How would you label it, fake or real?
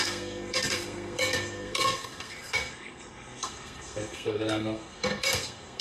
fake